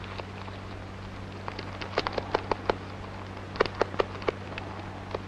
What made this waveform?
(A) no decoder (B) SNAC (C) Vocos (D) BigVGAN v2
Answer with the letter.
A